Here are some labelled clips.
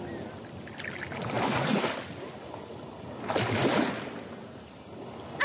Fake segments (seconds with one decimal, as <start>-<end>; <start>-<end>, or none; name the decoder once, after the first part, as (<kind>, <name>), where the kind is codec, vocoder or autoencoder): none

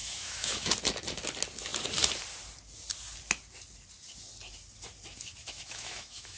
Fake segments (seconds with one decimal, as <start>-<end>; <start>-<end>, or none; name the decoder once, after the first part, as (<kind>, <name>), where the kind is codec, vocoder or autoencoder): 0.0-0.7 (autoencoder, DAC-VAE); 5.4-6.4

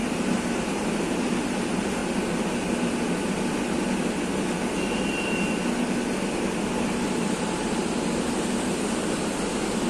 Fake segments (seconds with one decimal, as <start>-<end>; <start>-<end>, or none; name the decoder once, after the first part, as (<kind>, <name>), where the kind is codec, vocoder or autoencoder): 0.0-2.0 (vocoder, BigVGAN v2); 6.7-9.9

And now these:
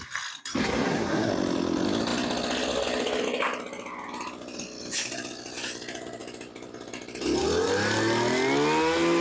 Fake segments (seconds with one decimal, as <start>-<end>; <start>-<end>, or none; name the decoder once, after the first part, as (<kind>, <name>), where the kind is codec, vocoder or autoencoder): 0.6-1.3 (codec, SNAC)

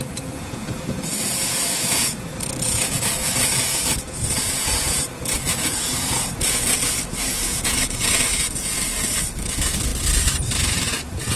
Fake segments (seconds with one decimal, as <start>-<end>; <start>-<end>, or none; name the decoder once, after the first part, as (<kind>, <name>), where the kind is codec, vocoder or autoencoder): 0.0-9.9 (vocoder, Vocos); 10.6-11.4

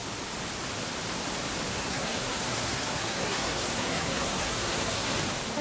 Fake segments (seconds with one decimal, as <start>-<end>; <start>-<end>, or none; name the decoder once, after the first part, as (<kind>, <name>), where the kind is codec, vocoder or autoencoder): 1.7-5.1 (codec, SNAC)

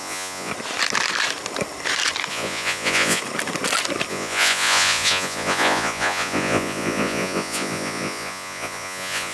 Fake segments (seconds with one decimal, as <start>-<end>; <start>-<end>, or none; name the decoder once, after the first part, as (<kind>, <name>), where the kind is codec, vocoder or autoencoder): 0.0-0.5 (vocoder, Vocos); 2.3-3.2; 4.1-9.3

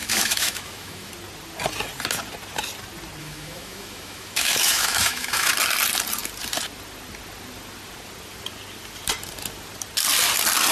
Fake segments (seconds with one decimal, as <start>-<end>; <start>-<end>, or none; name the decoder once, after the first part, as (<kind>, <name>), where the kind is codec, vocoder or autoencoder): 0.0-1.1 (autoencoder, DAC-VAE); 3.2-5.5